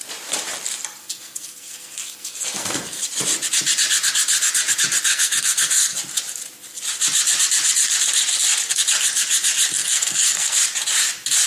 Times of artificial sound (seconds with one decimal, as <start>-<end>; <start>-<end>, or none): 1.0-3.0; 5.1-6.0; 9.8-10.6